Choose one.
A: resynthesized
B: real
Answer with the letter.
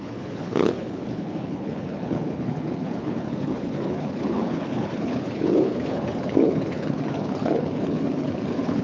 A